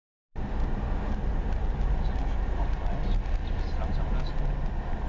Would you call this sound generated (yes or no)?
no